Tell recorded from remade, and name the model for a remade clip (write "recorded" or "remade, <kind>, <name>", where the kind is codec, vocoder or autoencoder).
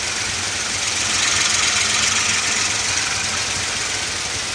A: recorded